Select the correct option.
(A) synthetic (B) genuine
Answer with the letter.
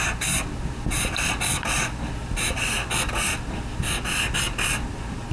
B